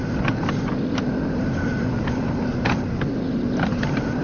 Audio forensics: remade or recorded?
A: recorded